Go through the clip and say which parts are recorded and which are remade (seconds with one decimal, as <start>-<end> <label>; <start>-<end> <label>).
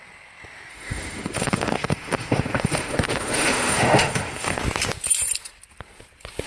0.0-0.7 recorded; 0.7-4.6 remade; 4.6-6.5 recorded